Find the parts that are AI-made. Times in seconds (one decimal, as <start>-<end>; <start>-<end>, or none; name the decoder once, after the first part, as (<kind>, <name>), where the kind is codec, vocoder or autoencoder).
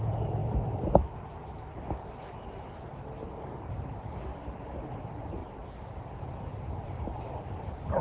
0.0-8.0 (vocoder, BigVGAN v2)